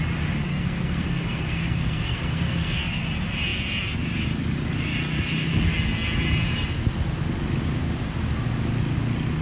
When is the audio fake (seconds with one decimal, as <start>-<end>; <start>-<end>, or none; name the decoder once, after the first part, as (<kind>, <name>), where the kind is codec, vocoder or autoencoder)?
0.5-3.0 (codec, SNAC)